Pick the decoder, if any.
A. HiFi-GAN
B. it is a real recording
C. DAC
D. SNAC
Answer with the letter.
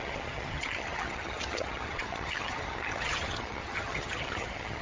A